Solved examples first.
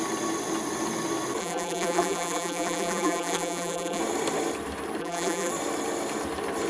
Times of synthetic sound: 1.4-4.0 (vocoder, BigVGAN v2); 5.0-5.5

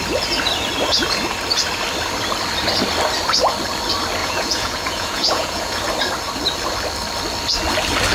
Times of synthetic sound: 4.2-5.8 (vocoder, Vocos)

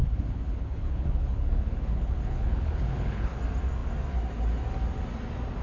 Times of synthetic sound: 0.0-3.4 (codec, HILCodec)

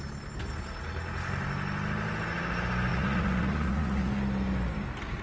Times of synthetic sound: 2.9-4.1 (vocoder, Vocos)

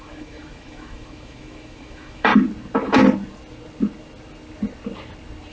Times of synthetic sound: 0.0-2.3 (autoencoder, DAC-VAE)

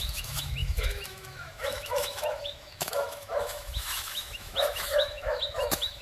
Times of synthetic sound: 0.0-6.0 (autoencoder, DAC-VAE)